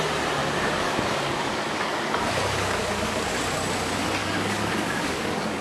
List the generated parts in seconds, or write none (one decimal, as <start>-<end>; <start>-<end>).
0.4-3.3; 4.2-5.6